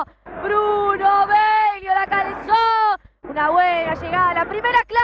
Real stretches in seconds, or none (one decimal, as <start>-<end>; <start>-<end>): 0.0-5.0